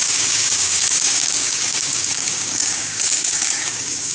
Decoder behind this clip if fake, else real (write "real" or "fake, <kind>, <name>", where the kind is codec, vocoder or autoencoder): fake, codec, DAC